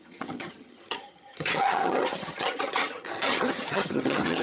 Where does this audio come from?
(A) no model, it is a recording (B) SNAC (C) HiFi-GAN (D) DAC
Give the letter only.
C